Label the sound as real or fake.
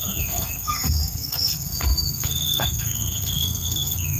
fake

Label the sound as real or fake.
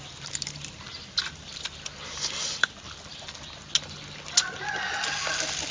real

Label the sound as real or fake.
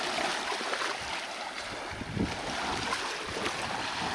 real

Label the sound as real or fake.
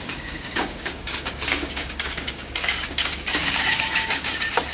fake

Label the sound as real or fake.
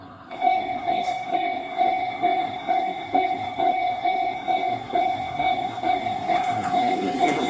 fake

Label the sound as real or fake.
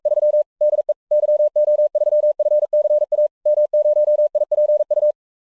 real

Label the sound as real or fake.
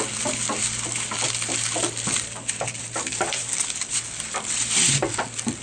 real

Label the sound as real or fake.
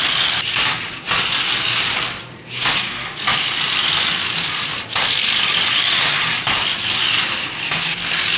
real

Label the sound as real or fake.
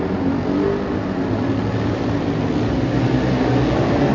real